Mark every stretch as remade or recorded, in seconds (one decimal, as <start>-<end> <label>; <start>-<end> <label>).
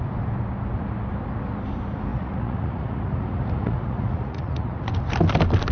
0.0-2.1 recorded; 2.1-4.9 remade; 4.9-5.7 recorded